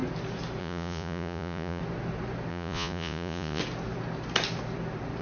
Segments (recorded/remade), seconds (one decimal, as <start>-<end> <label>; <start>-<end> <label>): 0.0-0.6 recorded; 0.6-1.8 remade; 1.8-2.5 recorded; 2.5-3.6 remade; 3.6-5.2 recorded